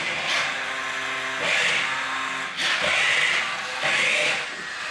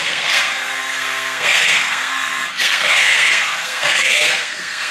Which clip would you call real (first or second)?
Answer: first